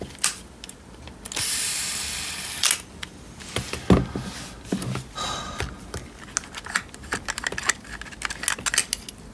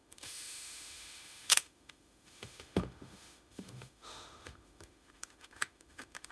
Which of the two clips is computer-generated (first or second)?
second